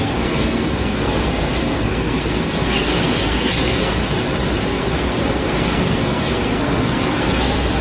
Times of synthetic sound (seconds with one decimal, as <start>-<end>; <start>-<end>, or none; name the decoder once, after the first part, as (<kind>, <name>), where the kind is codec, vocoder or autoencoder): 0.0-4.0 (codec, SNAC); 4.7-7.8